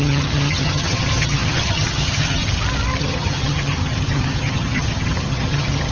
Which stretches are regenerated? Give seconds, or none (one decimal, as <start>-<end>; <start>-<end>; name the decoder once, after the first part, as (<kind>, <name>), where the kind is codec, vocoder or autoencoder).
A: 0.0-2.4 (vocoder, HiFi-GAN); 3.0-5.9